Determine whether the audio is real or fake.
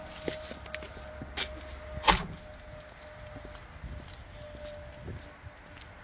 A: real